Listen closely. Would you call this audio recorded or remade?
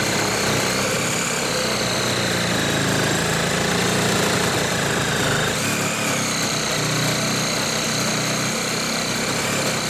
recorded